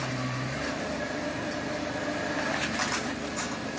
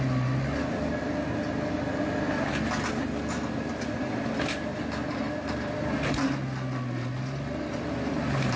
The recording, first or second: second